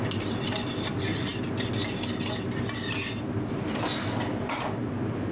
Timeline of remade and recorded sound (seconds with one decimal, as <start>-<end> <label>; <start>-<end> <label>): 0.0-5.3 recorded